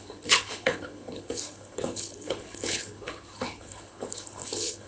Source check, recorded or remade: remade